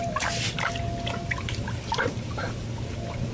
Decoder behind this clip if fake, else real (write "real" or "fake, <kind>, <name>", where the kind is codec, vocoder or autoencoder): real